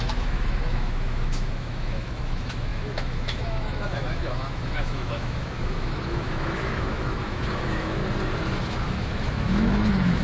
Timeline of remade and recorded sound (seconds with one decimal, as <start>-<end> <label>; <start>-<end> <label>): 0.0-8.0 remade; 8.0-8.6 recorded; 8.6-10.2 remade